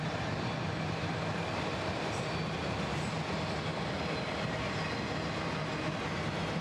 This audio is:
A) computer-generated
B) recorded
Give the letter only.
B